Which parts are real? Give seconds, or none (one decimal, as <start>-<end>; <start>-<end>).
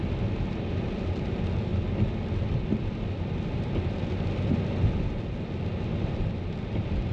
0.0-7.1